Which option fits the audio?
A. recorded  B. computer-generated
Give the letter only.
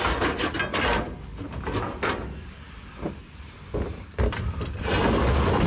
A